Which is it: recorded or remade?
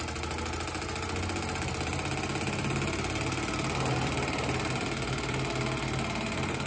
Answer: recorded